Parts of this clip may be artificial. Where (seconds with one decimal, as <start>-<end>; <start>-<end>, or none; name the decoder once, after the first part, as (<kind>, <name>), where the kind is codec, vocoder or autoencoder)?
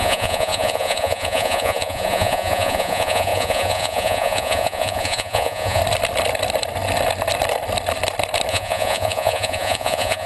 0.0-5.8 (vocoder, Vocos); 8.5-10.3